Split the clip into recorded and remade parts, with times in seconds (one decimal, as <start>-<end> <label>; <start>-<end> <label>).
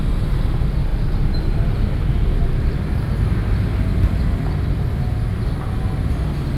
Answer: 0.0-3.7 remade; 3.7-6.6 recorded